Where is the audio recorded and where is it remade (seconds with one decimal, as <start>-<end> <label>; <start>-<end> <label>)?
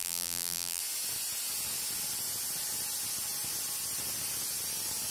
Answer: 0.0-0.8 remade; 0.8-5.1 recorded